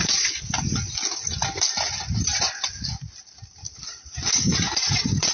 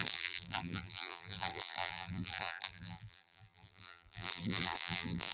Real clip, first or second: first